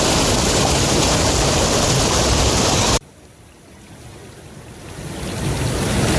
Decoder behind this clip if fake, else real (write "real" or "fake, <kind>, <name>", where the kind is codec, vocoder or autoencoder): real